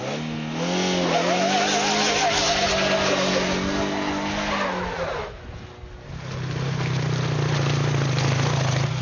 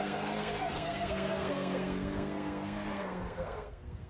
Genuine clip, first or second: first